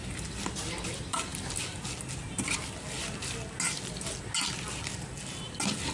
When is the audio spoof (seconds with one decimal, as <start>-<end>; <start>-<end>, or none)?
none